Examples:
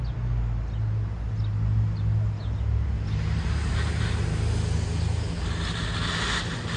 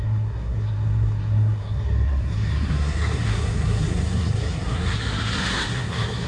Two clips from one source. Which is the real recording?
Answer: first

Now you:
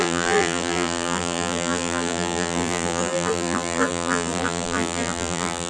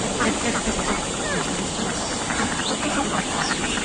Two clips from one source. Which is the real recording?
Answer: second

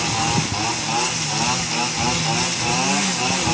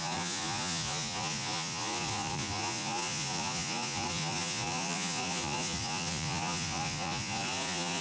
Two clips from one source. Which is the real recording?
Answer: first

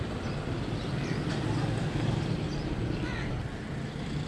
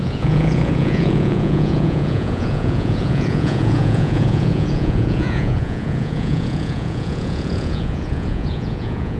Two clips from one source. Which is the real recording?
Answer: first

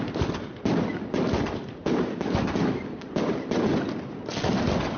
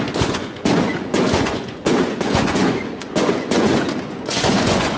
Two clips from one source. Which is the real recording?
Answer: first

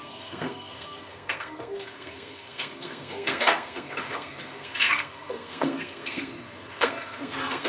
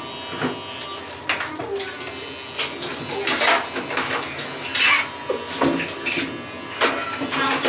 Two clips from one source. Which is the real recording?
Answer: second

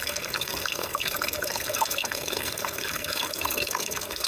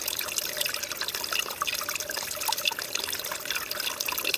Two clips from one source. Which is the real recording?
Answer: second